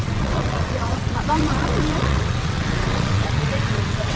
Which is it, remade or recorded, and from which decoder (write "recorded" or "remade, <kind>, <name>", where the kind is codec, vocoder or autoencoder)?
remade, vocoder, WaveNeXt